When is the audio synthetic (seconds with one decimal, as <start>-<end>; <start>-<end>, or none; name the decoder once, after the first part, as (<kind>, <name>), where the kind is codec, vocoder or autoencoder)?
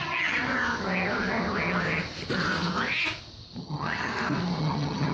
0.0-0.5 (vocoder, HiFi-GAN); 3.6-4.1; 4.6-5.1